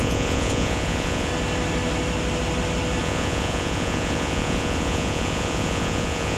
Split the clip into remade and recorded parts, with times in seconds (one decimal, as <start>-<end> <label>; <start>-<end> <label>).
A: 0.0-1.3 remade; 1.3-3.0 recorded; 3.0-6.4 remade